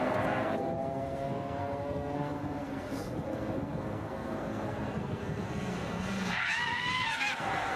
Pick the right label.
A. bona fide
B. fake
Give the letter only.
B